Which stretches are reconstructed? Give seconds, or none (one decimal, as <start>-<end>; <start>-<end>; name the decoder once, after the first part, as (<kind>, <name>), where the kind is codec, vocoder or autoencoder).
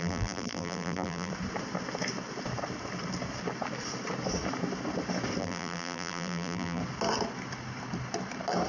0.0-1.3 (vocoder, BigVGAN v2); 5.4-6.8